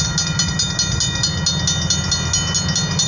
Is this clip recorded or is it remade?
recorded